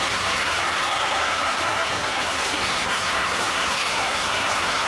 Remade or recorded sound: remade